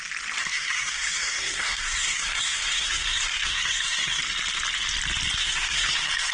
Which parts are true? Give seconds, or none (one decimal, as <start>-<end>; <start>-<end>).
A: 0.0-0.4; 4.2-5.4